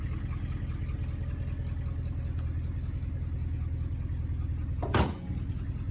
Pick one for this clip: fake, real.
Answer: real